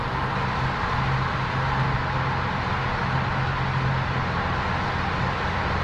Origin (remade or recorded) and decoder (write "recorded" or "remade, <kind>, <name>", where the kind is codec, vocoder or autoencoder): recorded